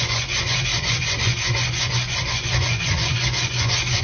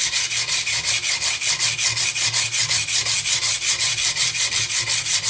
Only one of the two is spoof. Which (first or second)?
first